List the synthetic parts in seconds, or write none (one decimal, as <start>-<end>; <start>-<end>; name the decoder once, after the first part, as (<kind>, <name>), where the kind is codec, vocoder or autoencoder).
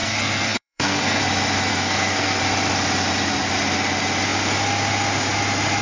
0.0-1.2 (codec, SNAC); 1.7-2.4